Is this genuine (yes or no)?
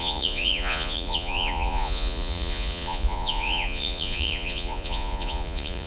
no